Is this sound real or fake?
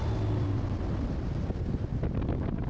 real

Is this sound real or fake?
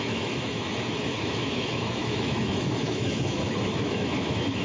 fake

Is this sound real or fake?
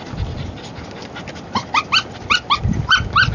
real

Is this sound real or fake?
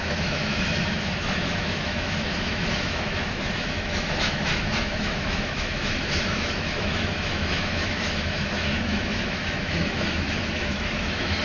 fake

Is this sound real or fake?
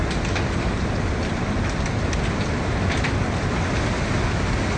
real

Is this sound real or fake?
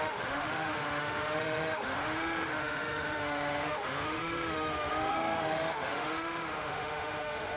fake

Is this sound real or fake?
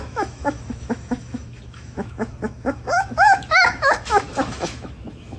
fake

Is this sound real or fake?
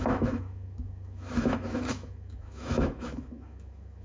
fake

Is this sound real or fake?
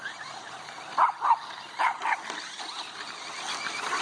real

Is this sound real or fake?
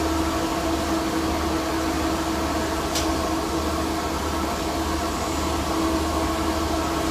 real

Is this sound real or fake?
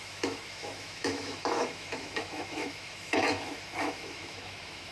fake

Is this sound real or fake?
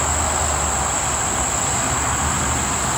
real